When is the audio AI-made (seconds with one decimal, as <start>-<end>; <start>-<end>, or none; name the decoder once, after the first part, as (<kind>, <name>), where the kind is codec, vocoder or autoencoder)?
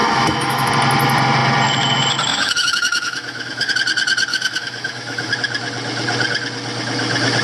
0.0-0.7 (autoencoder, DAC-VAE); 2.3-3.7; 4.3-5.3